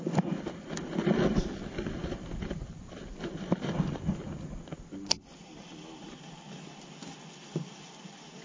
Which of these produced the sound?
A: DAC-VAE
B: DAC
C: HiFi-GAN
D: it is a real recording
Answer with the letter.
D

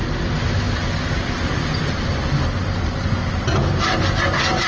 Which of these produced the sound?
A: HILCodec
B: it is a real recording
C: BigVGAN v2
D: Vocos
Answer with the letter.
B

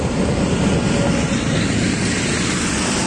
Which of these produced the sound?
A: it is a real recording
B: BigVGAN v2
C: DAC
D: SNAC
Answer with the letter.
A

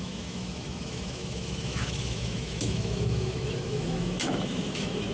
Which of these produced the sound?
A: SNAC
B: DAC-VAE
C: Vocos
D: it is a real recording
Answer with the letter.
B